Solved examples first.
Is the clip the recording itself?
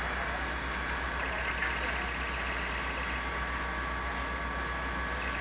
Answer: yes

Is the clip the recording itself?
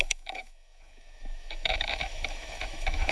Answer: no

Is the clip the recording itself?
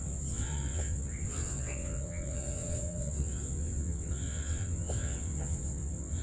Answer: no